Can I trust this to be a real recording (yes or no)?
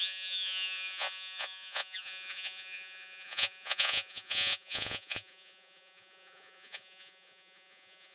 no